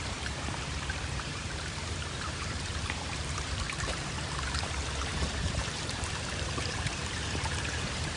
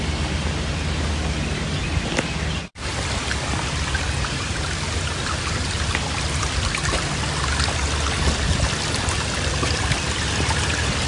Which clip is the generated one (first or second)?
first